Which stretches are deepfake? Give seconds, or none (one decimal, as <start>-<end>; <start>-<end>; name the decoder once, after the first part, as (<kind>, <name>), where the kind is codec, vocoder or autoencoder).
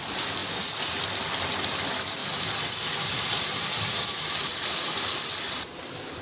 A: 0.0-0.4 (vocoder, BigVGAN v2); 1.3-6.2